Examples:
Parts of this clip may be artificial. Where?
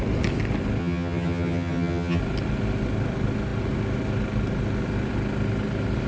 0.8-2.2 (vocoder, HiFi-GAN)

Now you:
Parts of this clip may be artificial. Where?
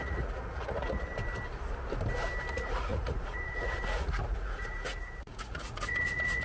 0.0-1.1 (vocoder, Vocos); 2.5-6.4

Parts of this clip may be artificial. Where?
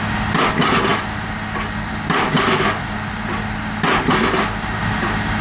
none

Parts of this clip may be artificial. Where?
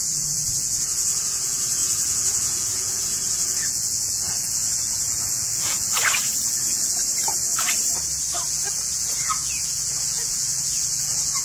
0.0-7.0 (vocoder, Vocos); 8.5-11.4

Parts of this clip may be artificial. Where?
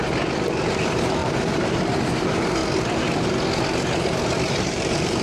0.7-2.6 (vocoder, BigVGAN v2); 4.5-5.2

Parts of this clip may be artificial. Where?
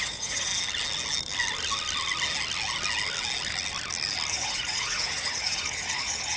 0.0-0.5 (vocoder, Vocos); 4.3-6.4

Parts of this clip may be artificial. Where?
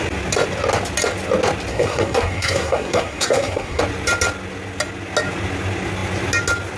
1.7-3.8 (codec, SNAC)